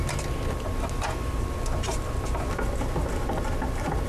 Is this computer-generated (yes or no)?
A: no